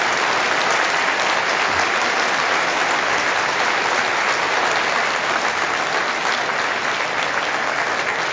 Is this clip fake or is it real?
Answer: real